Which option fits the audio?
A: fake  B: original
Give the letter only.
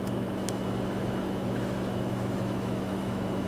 A